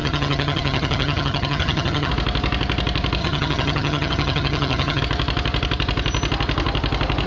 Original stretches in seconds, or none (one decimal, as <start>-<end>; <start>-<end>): 2.1-3.2; 5.0-7.3